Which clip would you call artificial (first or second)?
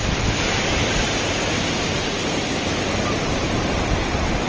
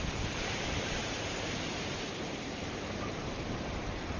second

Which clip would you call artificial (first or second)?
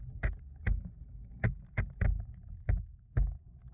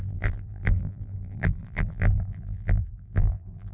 second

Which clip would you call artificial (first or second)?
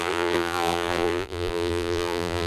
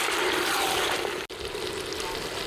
first